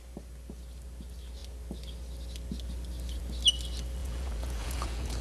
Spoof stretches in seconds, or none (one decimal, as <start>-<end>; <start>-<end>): 4.0-5.2